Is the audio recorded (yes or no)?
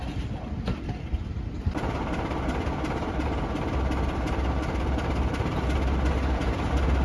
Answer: yes